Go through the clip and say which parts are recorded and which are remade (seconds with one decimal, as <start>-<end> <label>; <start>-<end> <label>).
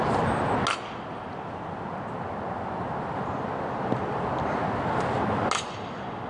0.0-6.3 recorded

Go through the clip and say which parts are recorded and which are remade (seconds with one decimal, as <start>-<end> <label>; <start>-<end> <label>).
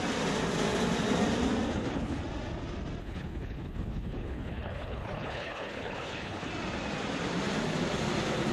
0.0-1.7 recorded; 1.7-2.2 remade; 2.2-3.0 recorded; 3.0-6.5 remade; 6.5-8.5 recorded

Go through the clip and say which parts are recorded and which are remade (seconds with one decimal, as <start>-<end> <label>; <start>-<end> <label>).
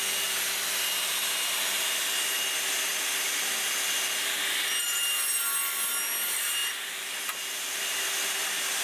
0.0-1.9 remade; 1.9-6.6 recorded; 6.6-7.8 remade; 7.8-8.8 recorded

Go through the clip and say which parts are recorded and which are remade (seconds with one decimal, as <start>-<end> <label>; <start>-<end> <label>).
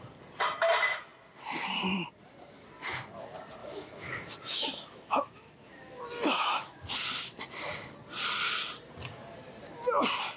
0.0-3.6 recorded; 3.6-6.9 remade; 6.9-10.4 recorded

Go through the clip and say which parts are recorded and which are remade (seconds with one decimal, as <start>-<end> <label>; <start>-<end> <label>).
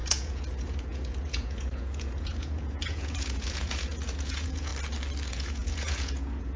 0.0-4.7 remade; 4.7-5.3 recorded; 5.3-6.6 remade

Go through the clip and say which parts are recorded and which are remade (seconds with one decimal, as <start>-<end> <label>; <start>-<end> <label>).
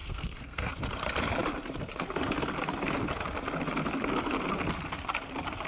0.0-0.7 remade; 0.7-5.7 recorded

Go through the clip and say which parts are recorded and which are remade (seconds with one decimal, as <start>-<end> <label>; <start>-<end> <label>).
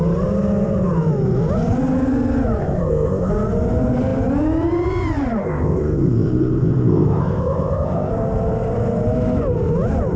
0.0-2.6 recorded; 2.6-3.3 remade; 3.3-5.4 recorded; 5.4-8.1 remade; 8.1-10.2 recorded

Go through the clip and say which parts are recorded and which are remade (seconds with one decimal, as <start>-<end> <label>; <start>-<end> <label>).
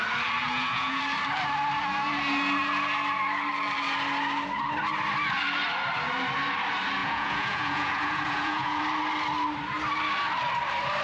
0.0-0.4 recorded; 0.4-1.0 remade; 1.0-7.0 recorded; 7.0-8.8 remade; 8.8-11.0 recorded